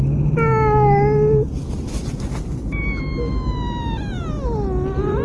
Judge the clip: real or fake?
real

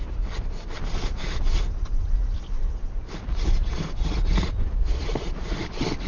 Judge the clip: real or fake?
real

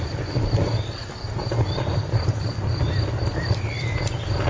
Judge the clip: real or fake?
real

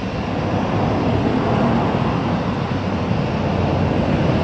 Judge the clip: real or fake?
real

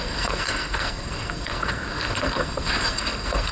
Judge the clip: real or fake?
fake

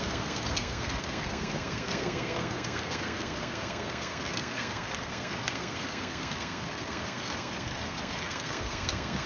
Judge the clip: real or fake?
fake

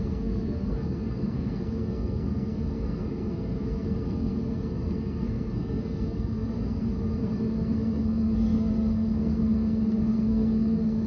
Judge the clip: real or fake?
fake